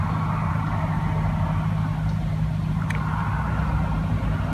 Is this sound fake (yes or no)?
no